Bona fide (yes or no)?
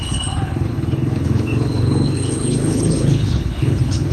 no